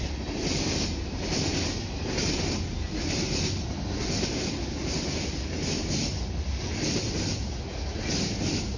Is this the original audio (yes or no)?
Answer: yes